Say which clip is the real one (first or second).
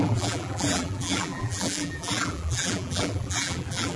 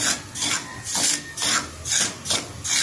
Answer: second